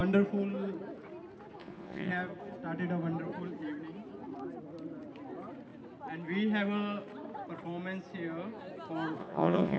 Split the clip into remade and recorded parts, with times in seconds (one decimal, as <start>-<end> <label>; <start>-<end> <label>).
0.0-1.6 recorded; 1.6-2.1 remade; 2.1-9.2 recorded; 9.2-9.8 remade